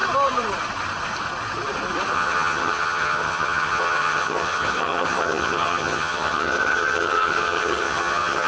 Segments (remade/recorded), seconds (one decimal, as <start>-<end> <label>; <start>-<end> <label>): 0.0-2.1 recorded; 2.1-8.5 remade